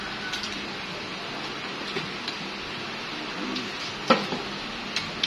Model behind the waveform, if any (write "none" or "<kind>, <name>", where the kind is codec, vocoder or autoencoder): none